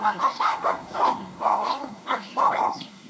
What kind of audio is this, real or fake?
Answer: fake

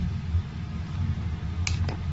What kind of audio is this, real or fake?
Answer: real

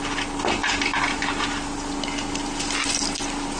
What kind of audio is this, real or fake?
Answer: real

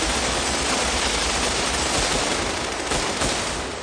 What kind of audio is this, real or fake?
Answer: real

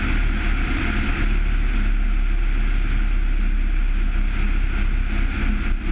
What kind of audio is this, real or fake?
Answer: real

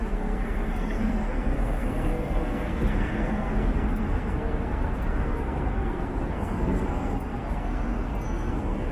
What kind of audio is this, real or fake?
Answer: fake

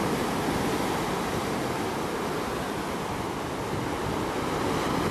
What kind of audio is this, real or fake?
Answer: real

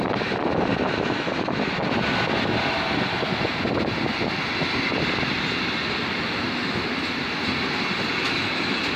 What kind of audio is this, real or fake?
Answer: real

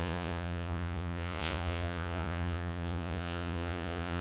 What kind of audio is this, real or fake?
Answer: fake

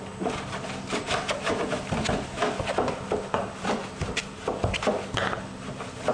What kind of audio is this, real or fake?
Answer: real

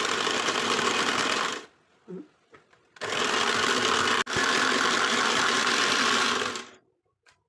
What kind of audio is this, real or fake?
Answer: real